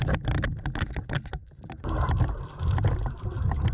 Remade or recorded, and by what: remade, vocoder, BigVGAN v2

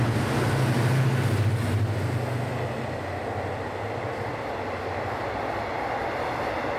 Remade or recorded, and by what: recorded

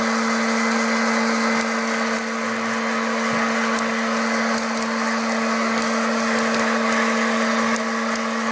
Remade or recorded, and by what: recorded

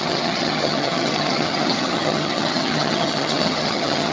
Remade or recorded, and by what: remade, vocoder, HiFi-GAN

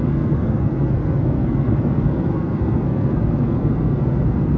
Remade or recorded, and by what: remade, codec, SNAC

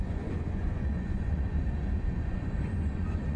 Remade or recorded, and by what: remade, vocoder, Vocos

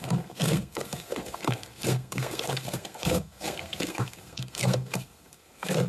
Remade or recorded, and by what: remade, codec, SNAC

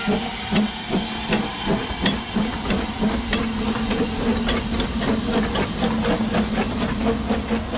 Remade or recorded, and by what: recorded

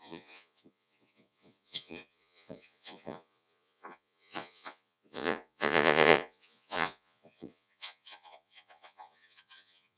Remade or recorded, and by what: remade, vocoder, Vocos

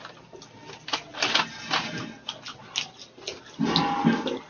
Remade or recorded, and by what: recorded